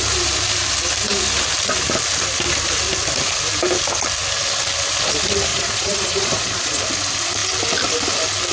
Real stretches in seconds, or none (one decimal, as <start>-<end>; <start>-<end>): 0.0-5.5; 6.8-8.5

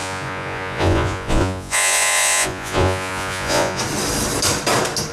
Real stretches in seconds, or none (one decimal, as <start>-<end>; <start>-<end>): 3.8-5.1